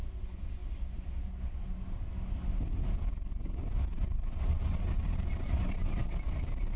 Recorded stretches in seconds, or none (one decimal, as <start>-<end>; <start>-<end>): 0.0-3.9